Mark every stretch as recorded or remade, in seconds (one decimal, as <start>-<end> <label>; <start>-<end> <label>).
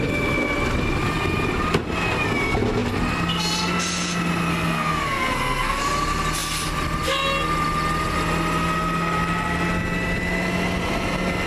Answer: 0.0-4.5 recorded; 4.5-5.8 remade; 5.8-11.5 recorded